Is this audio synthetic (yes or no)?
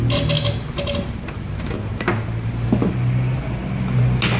no